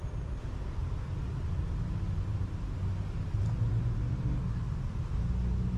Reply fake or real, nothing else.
real